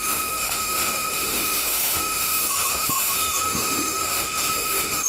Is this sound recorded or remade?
remade